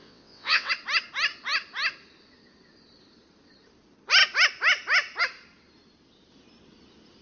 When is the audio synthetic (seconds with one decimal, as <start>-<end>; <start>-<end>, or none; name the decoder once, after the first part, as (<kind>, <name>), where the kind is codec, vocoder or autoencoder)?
0.0-0.7 (vocoder, WaveNeXt)